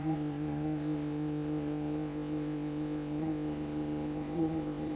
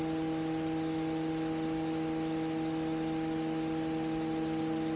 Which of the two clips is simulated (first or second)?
first